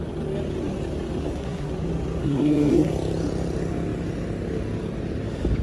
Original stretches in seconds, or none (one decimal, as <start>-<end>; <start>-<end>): 0.0-1.2; 1.7-2.2; 2.9-5.6